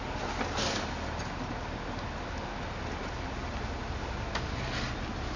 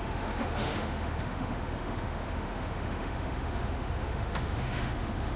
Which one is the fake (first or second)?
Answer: second